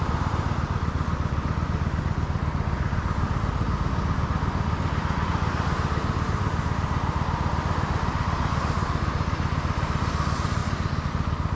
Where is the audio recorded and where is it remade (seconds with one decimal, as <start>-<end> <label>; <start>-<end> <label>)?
0.0-11.6 recorded